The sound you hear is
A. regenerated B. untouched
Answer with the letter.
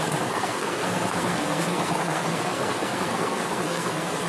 A